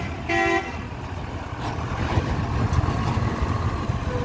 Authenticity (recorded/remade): recorded